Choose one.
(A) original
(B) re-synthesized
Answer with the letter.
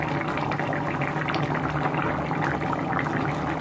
A